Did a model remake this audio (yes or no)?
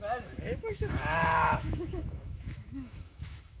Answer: yes